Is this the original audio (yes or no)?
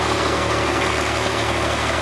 no